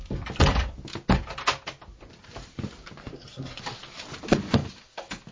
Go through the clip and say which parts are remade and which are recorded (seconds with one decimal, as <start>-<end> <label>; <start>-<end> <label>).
0.0-3.0 recorded; 3.0-3.6 remade; 3.6-5.3 recorded